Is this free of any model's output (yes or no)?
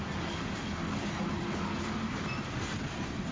yes